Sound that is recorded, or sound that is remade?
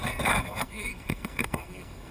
remade